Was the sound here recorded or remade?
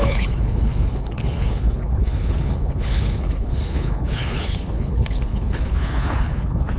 remade